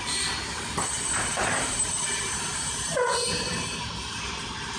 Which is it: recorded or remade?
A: remade